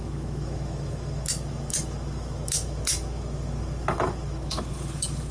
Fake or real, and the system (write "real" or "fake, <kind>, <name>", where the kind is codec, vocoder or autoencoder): fake, autoencoder, DAC-VAE